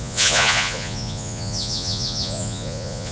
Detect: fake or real fake